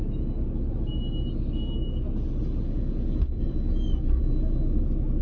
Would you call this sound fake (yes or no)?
no